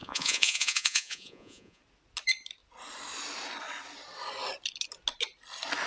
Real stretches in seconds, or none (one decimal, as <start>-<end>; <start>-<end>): 1.8-5.9